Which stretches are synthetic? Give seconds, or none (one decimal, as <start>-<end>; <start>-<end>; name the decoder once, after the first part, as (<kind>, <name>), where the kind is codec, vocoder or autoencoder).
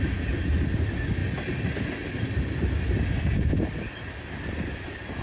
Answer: none